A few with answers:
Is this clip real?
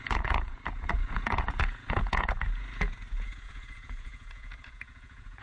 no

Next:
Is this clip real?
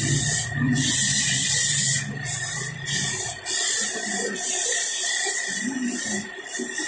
yes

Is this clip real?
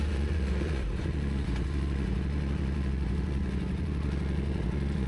no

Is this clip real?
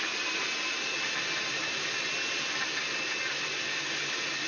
yes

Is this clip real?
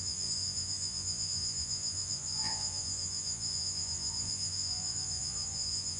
no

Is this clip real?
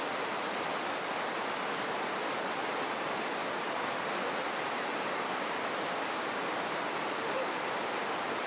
yes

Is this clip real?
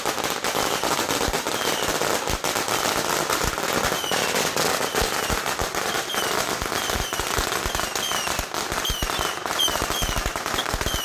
yes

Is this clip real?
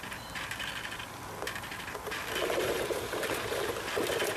yes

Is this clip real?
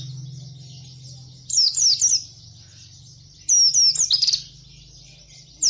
yes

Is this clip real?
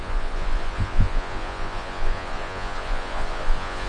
no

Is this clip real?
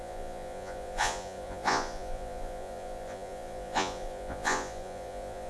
no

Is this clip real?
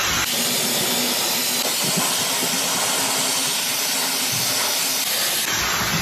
yes